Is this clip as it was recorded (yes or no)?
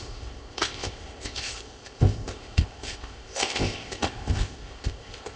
no